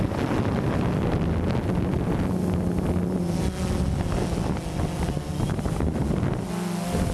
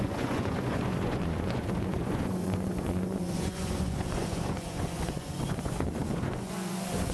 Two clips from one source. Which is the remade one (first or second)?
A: second